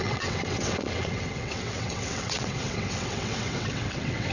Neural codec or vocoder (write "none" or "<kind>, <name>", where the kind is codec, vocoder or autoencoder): vocoder, WaveNeXt